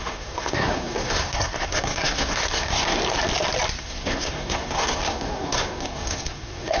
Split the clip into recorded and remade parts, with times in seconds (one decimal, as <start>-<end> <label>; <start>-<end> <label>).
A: 0.0-3.0 remade; 3.0-3.8 recorded; 3.8-6.8 remade